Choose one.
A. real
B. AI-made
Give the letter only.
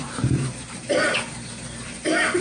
B